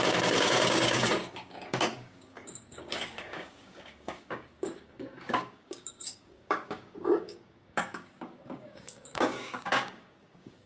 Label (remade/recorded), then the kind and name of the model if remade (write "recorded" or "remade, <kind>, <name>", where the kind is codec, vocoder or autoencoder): remade, codec, DAC